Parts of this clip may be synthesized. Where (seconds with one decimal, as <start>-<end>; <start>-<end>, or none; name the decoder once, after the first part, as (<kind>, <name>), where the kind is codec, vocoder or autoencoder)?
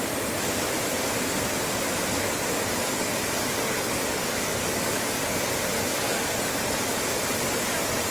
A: 2.1-5.5 (codec, DAC); 5.9-7.0